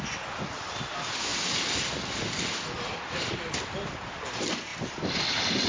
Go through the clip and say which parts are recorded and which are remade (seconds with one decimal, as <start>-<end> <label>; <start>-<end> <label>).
0.0-5.7 recorded